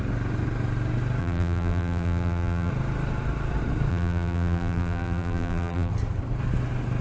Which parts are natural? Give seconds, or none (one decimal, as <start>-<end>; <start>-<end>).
0.0-1.2; 2.7-3.9; 5.9-7.0